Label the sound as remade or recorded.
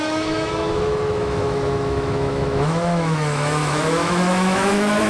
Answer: remade